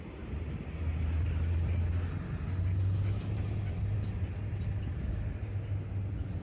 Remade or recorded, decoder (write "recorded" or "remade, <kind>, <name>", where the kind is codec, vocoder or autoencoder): recorded